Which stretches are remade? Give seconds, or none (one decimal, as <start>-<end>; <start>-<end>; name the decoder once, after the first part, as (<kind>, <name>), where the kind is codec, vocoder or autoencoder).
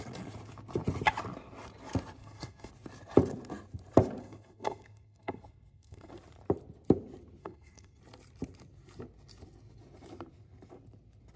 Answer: 2.2-2.7 (codec, SNAC); 4.2-6.1; 7.4-8.0